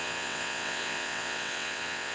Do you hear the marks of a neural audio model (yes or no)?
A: yes